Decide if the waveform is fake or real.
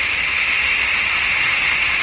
real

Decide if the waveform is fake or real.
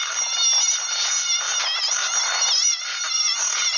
real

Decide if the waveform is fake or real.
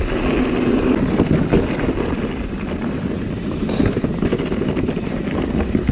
real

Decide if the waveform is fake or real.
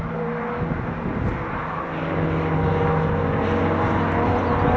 real